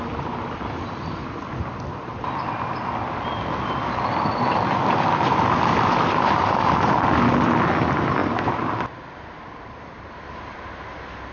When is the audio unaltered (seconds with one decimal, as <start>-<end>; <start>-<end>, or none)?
0.0-11.3